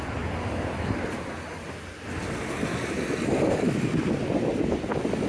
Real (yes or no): yes